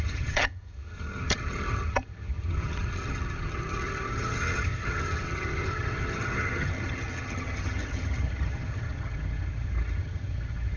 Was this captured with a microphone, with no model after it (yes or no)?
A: no